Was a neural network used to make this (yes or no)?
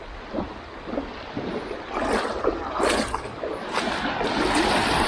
no